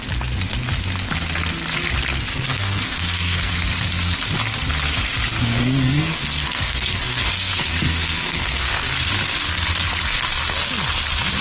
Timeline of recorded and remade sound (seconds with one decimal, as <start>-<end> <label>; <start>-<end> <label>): 0.0-2.3 recorded; 2.3-3.5 remade; 3.5-5.3 recorded; 5.3-9.1 remade; 9.1-11.4 recorded